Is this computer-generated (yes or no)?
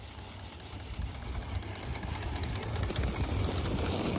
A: no